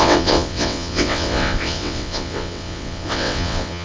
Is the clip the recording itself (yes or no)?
no